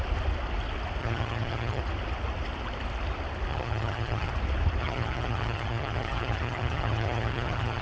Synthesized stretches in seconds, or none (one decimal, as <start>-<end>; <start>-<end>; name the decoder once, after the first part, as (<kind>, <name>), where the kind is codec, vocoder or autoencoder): 1.0-1.8 (vocoder, HiFi-GAN); 3.5-4.3; 4.8-7.8